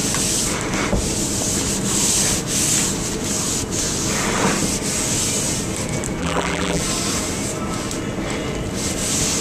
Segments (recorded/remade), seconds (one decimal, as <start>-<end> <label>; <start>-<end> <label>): 0.0-6.2 recorded; 6.2-6.8 remade; 6.8-9.4 recorded